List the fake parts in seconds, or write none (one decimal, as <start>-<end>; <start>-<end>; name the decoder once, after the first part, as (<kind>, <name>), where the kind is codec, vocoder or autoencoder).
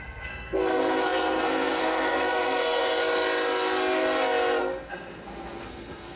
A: 0.0-2.8 (codec, SNAC); 4.6-6.2